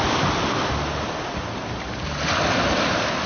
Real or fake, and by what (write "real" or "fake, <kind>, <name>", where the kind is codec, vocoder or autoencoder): real